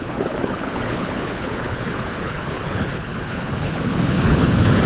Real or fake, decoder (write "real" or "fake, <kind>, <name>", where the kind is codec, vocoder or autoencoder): fake, codec, HILCodec